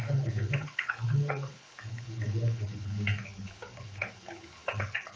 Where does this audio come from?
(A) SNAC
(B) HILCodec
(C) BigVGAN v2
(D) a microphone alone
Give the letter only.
B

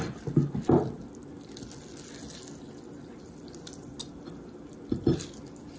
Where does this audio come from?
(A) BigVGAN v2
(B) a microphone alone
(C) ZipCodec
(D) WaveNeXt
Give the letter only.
B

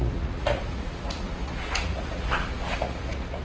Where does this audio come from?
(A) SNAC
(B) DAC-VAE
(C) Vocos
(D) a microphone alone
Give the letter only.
C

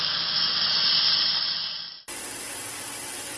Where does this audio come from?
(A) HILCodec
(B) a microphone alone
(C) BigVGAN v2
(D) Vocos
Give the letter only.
B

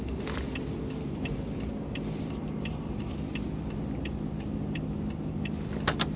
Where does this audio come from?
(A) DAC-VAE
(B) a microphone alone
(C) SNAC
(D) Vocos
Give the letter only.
B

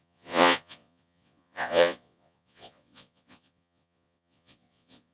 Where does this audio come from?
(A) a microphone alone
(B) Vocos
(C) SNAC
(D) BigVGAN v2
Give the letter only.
B